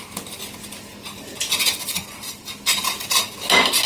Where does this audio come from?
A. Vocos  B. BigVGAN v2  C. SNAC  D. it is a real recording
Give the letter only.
D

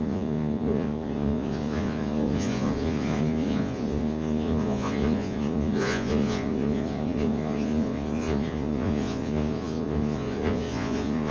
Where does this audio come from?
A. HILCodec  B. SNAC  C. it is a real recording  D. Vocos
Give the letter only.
D